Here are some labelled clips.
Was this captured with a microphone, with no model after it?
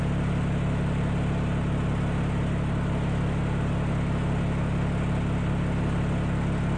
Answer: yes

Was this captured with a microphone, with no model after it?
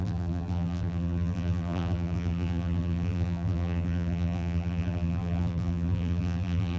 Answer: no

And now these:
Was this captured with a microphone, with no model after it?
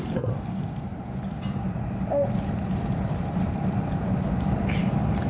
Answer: no